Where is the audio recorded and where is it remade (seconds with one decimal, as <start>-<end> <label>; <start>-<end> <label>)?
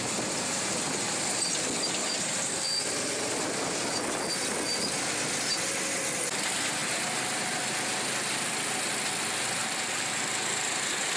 0.0-2.0 recorded; 2.0-3.9 remade; 3.9-9.6 recorded; 9.6-10.2 remade; 10.2-11.2 recorded